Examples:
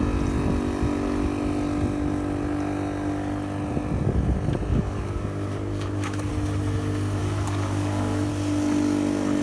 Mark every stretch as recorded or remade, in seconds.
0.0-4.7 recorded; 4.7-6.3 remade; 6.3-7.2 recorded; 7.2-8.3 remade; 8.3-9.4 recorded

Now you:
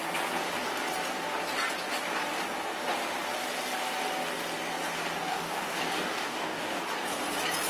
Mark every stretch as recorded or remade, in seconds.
0.0-5.3 recorded; 5.3-6.8 remade; 6.8-7.7 recorded

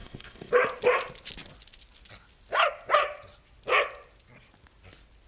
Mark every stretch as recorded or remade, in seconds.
0.0-0.5 remade; 0.5-5.3 recorded

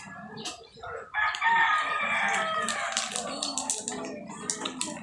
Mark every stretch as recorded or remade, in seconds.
0.0-5.0 recorded